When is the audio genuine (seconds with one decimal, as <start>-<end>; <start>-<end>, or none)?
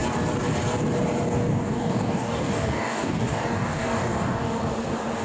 0.0-1.5; 4.6-5.2